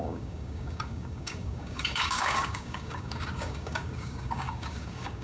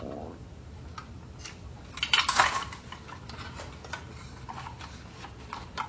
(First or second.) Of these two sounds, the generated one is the first